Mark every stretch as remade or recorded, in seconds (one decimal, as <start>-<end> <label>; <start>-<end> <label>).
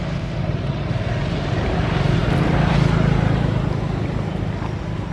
0.0-5.1 recorded